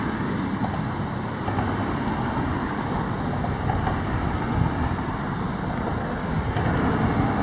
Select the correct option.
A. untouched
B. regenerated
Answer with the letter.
A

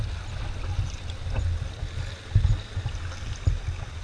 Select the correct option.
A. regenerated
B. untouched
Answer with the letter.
B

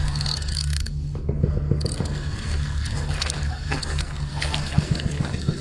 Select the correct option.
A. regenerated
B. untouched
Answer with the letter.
A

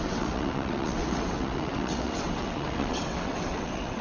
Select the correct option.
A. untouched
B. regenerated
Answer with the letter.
B